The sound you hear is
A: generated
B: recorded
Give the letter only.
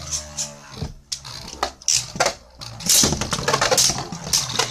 B